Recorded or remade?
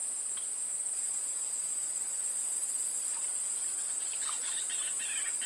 recorded